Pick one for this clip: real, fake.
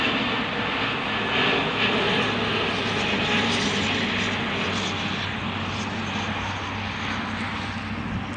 real